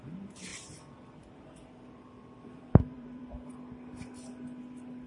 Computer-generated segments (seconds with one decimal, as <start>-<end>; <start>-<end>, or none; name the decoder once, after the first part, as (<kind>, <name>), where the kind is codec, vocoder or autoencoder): 0.5-3.5 (vocoder, BigVGAN v2)